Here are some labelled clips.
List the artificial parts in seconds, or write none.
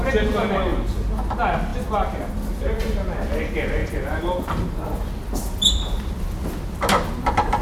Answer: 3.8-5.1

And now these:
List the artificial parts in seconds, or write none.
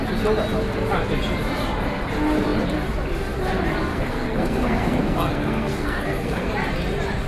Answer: 3.9-6.5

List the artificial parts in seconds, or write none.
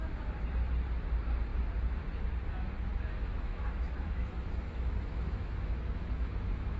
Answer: 2.9-6.8